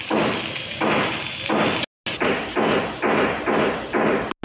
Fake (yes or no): no